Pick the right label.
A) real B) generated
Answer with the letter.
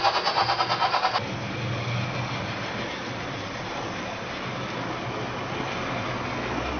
A